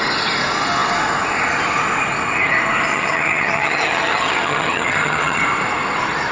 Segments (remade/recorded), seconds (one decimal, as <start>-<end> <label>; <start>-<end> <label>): 0.0-2.9 recorded; 2.9-5.4 remade; 5.4-6.3 recorded